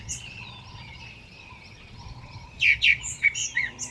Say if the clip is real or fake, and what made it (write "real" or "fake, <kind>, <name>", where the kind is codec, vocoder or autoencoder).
fake, vocoder, Vocos